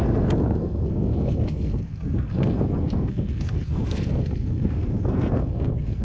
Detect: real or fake fake